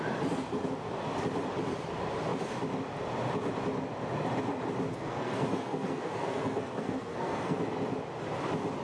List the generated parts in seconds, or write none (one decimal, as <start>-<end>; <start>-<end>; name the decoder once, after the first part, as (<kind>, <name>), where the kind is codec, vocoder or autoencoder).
4.9-7.6 (codec, SNAC)